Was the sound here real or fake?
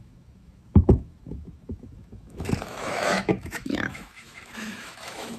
fake